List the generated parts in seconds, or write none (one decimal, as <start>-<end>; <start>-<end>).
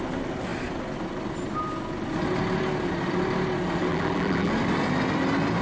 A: 3.9-4.5